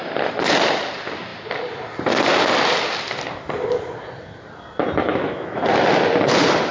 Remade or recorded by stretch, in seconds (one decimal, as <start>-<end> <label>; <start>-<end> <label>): 0.0-5.0 recorded; 5.0-5.6 remade; 5.6-6.7 recorded